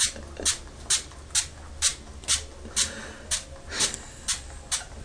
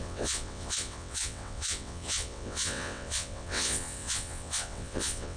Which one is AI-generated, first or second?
second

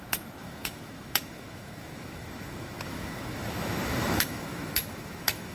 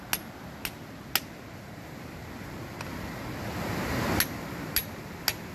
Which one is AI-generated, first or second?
first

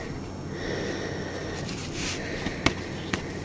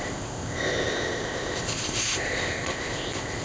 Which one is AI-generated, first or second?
second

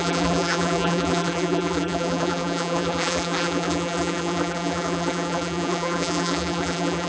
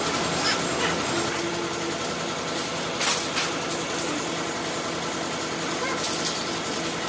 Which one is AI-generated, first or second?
first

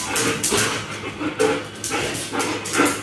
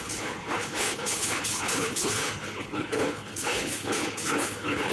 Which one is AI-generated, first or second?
second